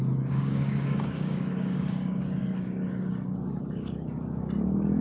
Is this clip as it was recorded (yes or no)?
no